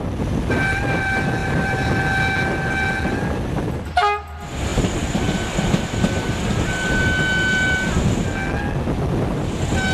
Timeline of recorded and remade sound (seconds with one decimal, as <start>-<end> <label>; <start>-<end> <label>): 0.0-1.4 recorded; 1.4-1.9 remade; 1.9-4.7 recorded; 4.7-5.2 remade; 5.2-9.9 recorded